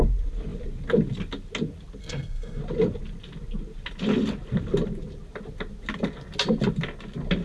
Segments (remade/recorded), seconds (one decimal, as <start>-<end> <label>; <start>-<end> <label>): 0.0-2.0 recorded; 2.0-2.6 remade; 2.6-7.4 recorded